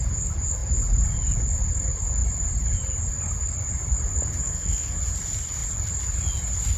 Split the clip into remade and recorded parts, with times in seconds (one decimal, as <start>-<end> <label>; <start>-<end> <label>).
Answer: 0.0-4.4 recorded; 4.4-5.0 remade; 5.0-6.8 recorded